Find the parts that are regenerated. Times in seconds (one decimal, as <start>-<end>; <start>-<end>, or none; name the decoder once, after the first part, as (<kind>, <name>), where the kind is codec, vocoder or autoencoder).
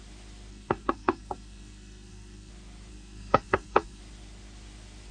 0.5-2.5 (codec, SNAC); 2.9-4.0